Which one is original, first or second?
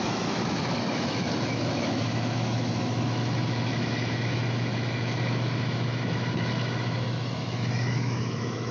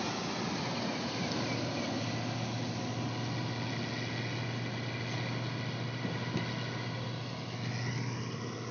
second